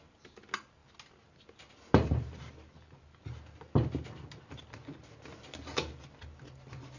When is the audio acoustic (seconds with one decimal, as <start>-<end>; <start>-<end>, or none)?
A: 0.0-7.0